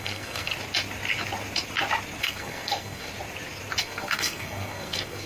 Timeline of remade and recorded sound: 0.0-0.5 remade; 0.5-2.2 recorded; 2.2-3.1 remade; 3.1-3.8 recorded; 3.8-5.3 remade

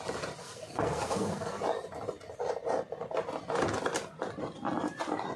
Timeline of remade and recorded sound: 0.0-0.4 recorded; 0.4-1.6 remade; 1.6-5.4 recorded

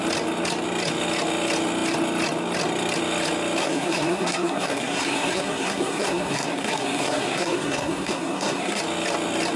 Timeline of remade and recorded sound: 0.0-3.6 recorded; 3.6-8.8 remade; 8.8-9.6 recorded